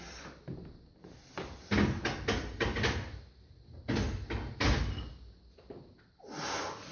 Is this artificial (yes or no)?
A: no